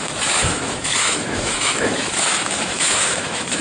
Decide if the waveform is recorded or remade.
remade